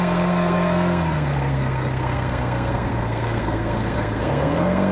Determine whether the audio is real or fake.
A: fake